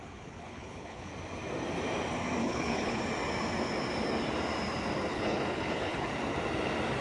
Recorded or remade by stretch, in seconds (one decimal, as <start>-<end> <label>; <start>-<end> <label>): 0.0-1.1 remade; 1.1-2.4 recorded; 2.4-3.0 remade; 3.0-5.1 recorded; 5.1-6.1 remade; 6.1-7.0 recorded